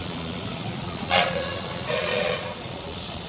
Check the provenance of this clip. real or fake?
fake